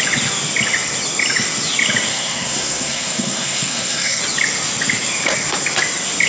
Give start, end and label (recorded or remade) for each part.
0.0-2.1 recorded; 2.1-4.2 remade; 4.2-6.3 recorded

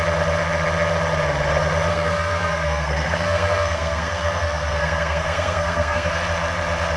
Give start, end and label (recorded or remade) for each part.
0.0-1.9 recorded; 1.9-6.1 remade; 6.1-7.0 recorded

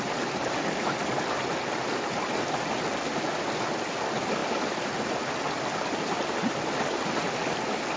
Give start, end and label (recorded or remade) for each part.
0.0-8.0 recorded

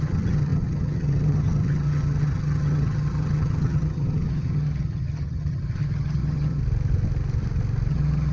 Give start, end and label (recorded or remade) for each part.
0.0-6.6 remade; 6.6-7.9 recorded; 7.9-8.3 remade

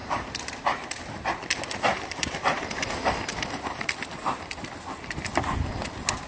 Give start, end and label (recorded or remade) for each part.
0.0-0.6 remade; 0.6-1.9 recorded; 1.9-5.3 remade; 5.3-6.3 recorded

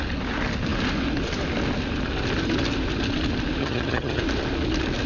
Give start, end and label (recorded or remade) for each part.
0.0-3.6 recorded; 3.6-4.2 remade; 4.2-5.1 recorded